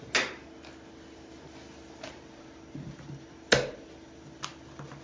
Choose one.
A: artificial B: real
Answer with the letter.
B